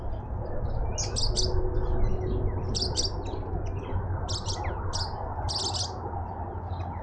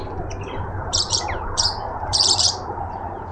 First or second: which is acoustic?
first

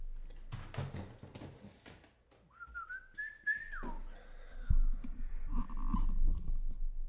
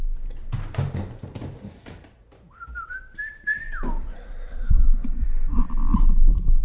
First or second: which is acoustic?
first